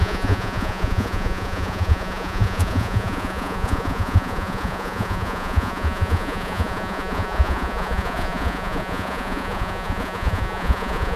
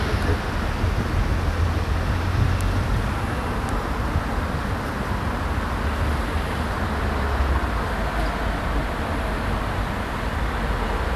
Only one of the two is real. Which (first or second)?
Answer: second